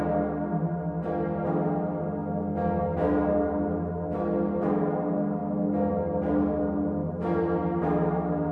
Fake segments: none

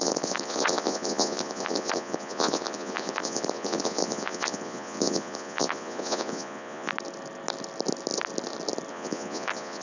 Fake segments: 0.0-6.9 (vocoder, Vocos); 8.9-9.8

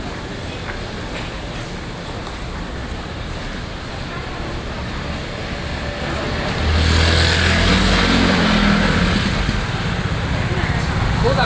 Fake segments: 2.8-3.9 (vocoder, BigVGAN v2)

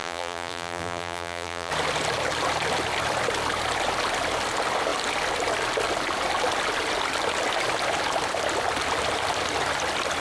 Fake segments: 0.0-1.7 (vocoder, BigVGAN v2)

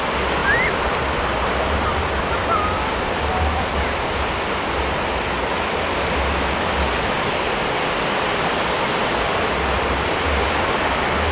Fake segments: none

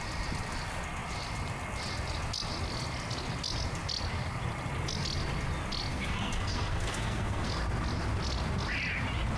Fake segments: 5.9-7.6 (codec, SNAC)